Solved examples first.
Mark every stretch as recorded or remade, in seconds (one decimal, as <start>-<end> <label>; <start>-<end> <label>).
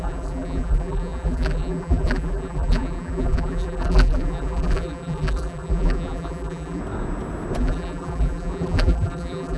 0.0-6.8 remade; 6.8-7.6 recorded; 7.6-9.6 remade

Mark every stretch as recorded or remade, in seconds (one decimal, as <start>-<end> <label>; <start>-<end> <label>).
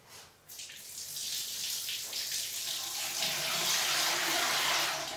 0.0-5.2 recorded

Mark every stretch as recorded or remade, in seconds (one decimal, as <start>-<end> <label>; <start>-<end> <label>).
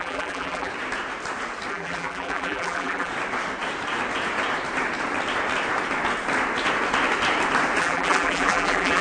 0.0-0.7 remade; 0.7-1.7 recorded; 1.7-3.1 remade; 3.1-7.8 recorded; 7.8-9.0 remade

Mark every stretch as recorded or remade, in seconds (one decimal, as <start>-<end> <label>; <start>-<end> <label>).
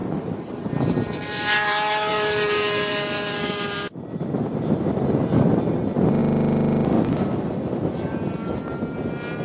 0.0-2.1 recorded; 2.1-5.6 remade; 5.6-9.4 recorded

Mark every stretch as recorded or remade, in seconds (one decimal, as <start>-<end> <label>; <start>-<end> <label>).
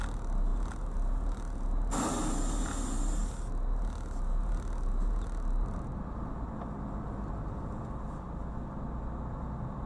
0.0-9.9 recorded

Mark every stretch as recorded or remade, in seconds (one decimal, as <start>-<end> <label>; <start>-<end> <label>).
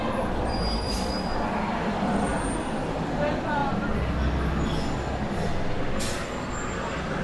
0.0-2.3 remade; 2.3-2.8 recorded; 2.8-3.6 remade; 3.6-7.2 recorded